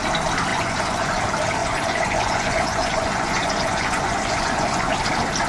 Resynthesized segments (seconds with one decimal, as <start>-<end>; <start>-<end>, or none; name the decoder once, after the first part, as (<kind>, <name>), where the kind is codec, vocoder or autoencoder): 0.5-1.2 (vocoder, Vocos); 1.6-4.9